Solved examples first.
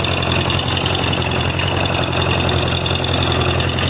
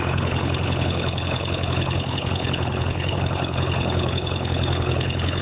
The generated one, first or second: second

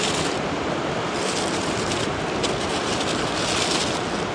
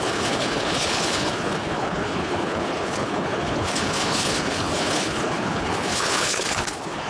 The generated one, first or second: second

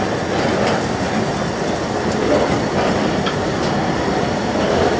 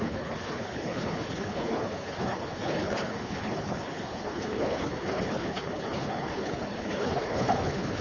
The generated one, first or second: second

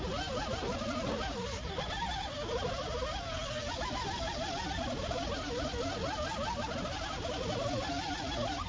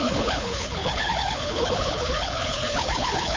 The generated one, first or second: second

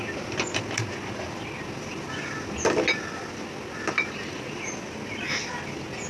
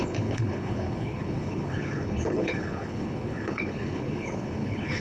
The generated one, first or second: second